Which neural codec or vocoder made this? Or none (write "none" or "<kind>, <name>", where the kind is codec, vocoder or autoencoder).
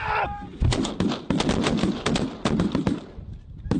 none